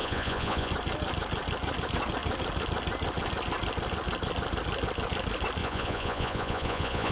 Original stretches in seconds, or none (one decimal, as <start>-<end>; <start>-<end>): 0.7-5.6